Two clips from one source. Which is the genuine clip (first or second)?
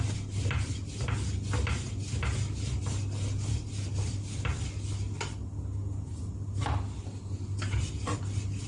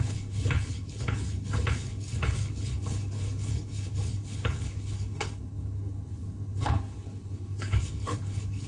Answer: first